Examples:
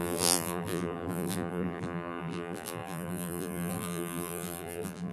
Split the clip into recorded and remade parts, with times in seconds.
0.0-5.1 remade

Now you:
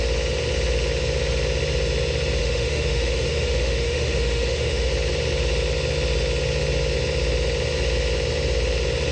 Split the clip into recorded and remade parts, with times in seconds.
0.0-2.4 recorded; 2.4-4.9 remade; 4.9-9.1 recorded

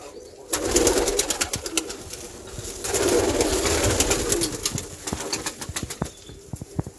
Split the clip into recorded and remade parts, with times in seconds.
0.0-7.0 recorded